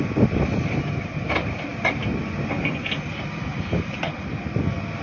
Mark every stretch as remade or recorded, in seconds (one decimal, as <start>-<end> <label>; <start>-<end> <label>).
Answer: 0.0-3.5 recorded; 3.5-4.0 remade; 4.0-5.0 recorded